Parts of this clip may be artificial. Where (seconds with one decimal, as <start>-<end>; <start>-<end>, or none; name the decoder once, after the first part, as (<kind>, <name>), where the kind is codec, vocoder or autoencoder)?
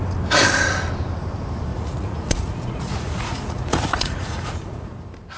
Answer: 1.7-4.9 (vocoder, Vocos)